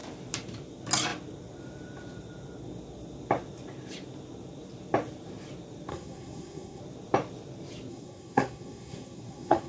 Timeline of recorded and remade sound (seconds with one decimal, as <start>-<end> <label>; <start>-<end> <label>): 0.0-5.9 recorded; 5.9-6.8 remade; 6.8-7.9 recorded; 7.9-9.7 remade